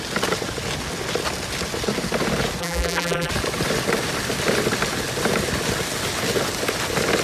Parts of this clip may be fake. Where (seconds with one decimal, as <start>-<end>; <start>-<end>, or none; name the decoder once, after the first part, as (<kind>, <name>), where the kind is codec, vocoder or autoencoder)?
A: 2.6-3.3 (vocoder, BigVGAN v2)